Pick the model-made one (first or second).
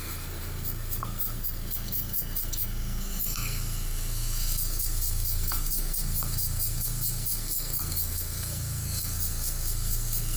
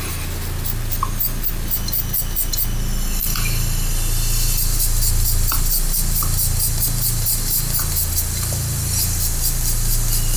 first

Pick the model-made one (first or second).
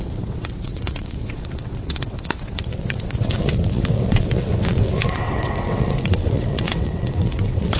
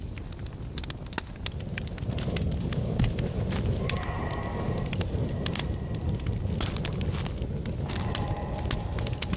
first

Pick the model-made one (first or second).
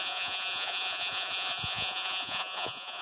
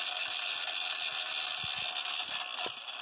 first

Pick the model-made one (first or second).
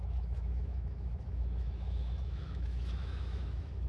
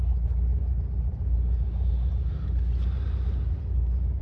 first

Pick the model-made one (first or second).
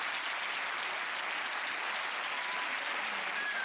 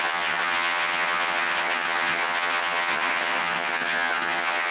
second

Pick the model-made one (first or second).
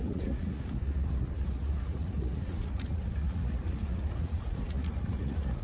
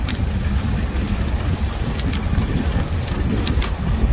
first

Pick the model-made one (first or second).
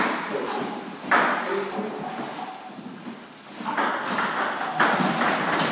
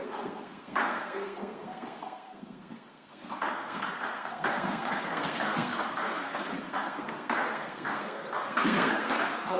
second